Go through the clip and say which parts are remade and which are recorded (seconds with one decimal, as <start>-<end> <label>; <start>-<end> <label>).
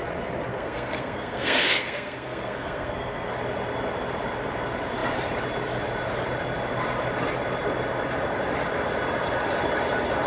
0.0-0.5 recorded; 0.5-3.3 remade; 3.3-10.3 recorded